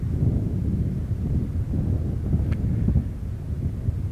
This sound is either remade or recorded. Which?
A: recorded